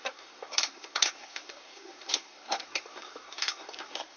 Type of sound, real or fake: fake